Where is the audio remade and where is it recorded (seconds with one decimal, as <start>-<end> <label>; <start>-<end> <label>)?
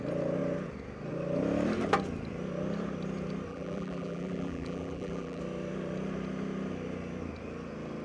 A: 0.0-3.5 recorded; 3.5-5.4 remade; 5.4-8.0 recorded